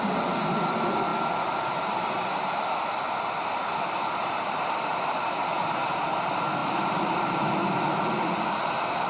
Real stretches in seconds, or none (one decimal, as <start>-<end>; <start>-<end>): 0.0-9.1